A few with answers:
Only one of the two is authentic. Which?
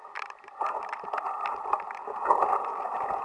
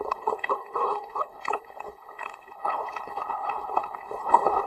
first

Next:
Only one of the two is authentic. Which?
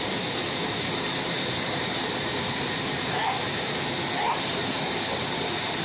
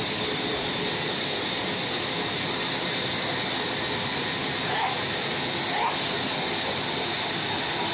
second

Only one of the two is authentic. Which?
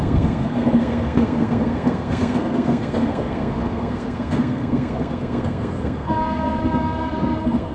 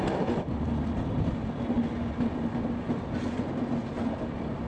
second